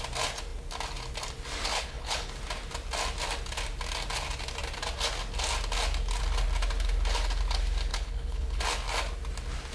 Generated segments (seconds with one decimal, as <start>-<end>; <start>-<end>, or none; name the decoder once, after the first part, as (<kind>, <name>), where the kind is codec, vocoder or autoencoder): 1.7-2.3 (codec, HILCodec); 7.9-8.6